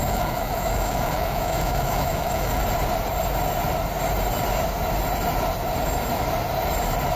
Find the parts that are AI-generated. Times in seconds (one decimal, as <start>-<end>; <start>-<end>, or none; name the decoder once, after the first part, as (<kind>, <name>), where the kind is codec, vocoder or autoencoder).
0.0-2.6 (autoencoder, DAC-VAE)